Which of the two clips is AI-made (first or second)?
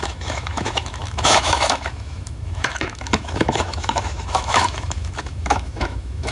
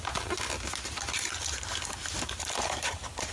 first